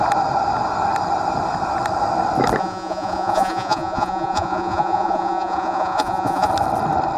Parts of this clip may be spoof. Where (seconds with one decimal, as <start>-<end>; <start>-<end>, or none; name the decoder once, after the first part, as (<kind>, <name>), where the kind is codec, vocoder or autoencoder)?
2.6-6.5 (vocoder, Vocos)